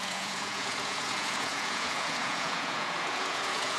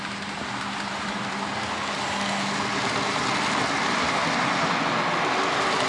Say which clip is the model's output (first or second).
first